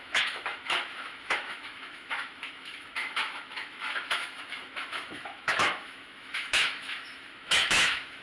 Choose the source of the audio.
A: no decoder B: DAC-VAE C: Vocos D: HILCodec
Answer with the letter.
B